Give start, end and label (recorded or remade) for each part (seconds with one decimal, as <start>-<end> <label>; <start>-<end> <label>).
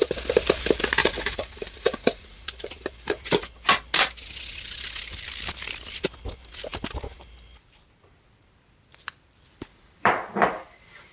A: 0.0-1.0 recorded; 1.0-2.7 remade; 2.7-11.1 recorded